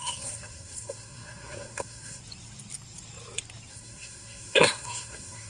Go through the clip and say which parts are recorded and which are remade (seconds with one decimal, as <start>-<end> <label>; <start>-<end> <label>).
0.0-2.2 remade; 2.2-3.7 recorded; 3.7-5.5 remade